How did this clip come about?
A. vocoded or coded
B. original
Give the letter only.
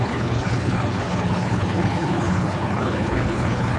A